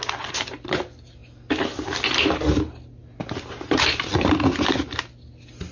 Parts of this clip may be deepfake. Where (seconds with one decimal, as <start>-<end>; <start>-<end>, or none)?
none